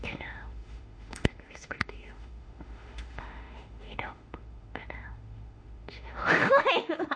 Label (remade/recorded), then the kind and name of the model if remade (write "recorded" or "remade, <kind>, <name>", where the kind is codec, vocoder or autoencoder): remade, autoencoder, DAC-VAE